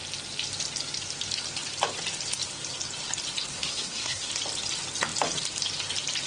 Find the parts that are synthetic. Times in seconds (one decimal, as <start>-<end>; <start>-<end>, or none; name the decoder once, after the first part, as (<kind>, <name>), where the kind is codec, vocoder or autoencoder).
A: 3.5-4.3 (codec, SNAC)